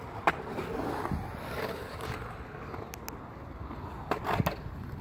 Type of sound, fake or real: real